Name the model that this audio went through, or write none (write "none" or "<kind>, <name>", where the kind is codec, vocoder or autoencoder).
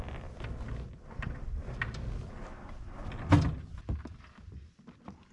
none